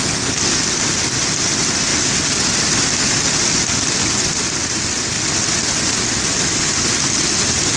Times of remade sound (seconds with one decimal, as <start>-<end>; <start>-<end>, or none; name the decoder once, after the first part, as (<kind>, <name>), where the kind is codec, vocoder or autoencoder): none

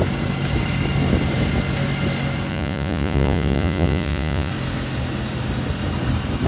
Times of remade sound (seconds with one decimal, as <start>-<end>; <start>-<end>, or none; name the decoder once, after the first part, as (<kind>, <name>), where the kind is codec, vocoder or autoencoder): 2.5-4.5 (vocoder, Vocos)